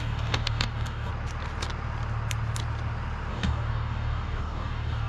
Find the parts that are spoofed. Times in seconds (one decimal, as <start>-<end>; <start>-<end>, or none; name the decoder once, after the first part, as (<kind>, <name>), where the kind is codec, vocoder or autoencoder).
0.0-1.1 (codec, DAC); 3.3-5.1